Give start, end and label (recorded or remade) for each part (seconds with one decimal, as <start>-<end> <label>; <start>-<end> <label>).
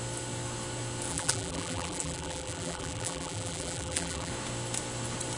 0.0-1.1 recorded; 1.1-4.3 remade; 4.3-5.4 recorded